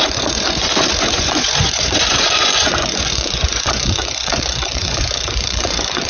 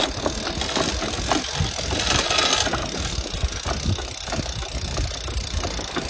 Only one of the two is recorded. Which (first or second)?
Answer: second